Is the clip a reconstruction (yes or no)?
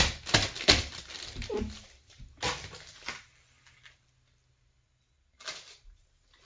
no